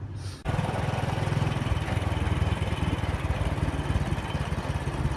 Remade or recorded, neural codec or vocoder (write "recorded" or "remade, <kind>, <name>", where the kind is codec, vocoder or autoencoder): recorded